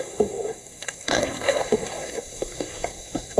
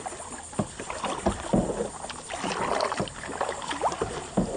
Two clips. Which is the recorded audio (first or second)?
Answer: second